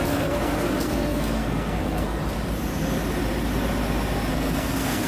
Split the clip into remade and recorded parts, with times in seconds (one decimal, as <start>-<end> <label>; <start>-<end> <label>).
0.0-2.2 remade; 2.2-4.3 recorded; 4.3-5.1 remade